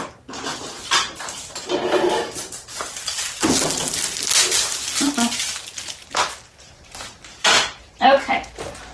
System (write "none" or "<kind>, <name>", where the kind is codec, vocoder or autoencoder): none